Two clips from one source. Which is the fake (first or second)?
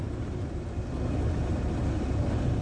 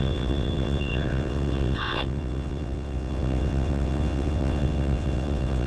second